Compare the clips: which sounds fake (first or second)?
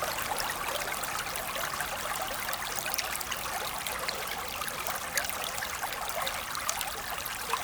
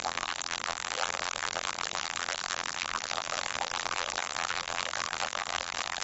second